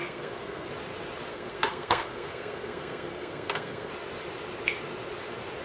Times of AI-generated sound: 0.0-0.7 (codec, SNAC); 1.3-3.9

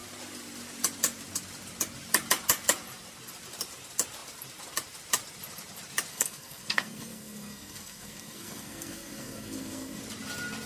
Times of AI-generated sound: 6.1-10.0 (codec, SNAC)